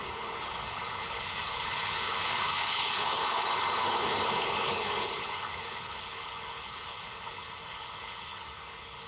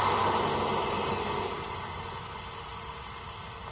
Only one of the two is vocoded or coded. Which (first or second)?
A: first